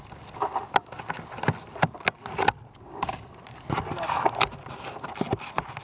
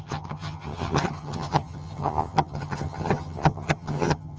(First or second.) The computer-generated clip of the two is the second